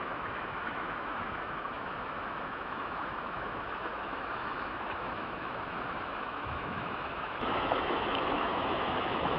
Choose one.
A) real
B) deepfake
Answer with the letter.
B